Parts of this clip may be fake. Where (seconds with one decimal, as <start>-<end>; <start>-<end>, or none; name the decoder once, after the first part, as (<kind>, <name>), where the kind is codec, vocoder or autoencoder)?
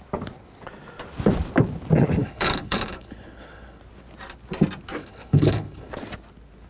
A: 2.2-3.8 (codec, HILCodec); 5.0-5.9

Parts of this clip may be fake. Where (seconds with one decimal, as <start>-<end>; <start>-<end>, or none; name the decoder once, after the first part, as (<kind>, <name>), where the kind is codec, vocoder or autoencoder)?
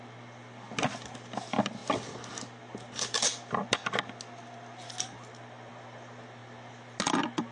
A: none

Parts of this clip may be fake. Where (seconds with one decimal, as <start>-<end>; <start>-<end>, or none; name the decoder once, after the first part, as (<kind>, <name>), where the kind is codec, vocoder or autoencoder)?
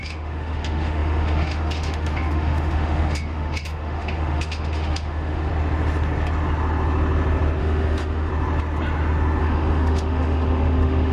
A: 0.0-5.5 (autoencoder, DAC-VAE); 7.6-8.3; 9.4-11.1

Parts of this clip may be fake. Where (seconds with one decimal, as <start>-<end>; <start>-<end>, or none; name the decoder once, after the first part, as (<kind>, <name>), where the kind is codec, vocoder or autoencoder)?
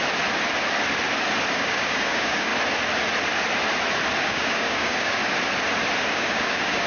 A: 1.5-2.5 (codec, DAC); 4.2-5.2; 6.1-6.9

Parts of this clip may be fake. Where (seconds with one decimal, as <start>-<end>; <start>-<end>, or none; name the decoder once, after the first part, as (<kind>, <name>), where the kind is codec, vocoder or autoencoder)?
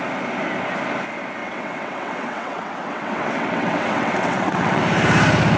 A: 1.4-4.8 (vocoder, WaveNeXt)